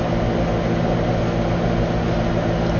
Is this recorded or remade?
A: recorded